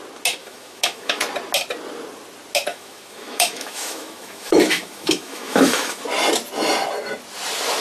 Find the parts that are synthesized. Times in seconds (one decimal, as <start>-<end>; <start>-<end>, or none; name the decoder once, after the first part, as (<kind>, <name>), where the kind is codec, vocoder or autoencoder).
0.4-1.2 (autoencoder, DAC-VAE); 2.7-6.0